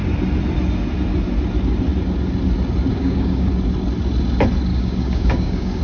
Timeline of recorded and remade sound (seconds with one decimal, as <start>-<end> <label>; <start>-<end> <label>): 0.0-2.9 recorded; 2.9-3.5 remade; 3.5-4.7 recorded; 4.7-5.8 remade